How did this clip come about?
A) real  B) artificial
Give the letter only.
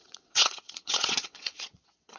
B